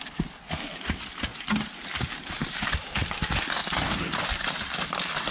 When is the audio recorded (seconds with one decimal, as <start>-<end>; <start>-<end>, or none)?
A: 1.3-2.3; 3.6-5.3